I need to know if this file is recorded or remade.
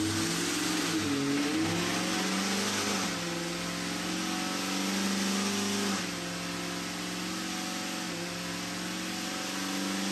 recorded